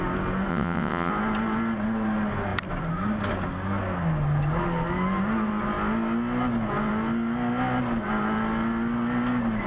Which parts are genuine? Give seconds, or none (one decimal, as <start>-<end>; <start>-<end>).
0.0-0.5; 1.1-9.7